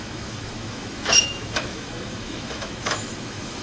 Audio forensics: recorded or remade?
remade